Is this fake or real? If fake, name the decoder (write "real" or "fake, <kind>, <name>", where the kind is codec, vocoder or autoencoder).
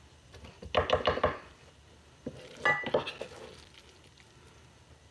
real